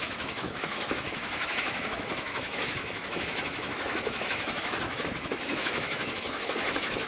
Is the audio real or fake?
fake